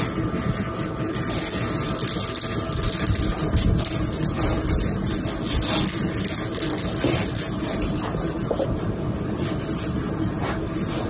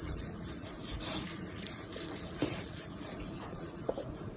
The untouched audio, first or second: first